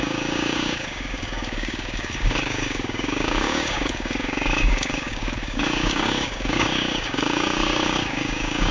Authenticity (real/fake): fake